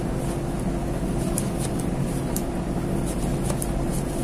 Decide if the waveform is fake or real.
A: real